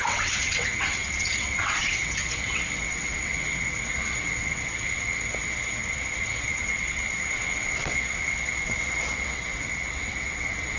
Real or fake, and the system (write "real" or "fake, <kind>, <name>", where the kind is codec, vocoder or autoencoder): fake, vocoder, WaveNeXt